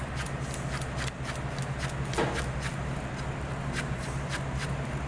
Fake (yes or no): no